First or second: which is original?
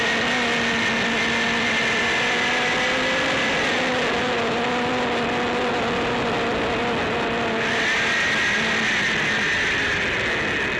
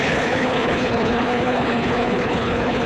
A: first